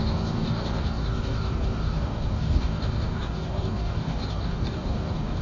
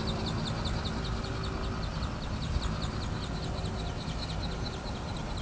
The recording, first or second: second